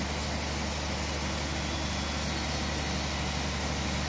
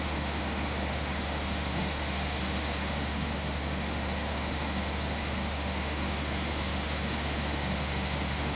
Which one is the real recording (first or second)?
first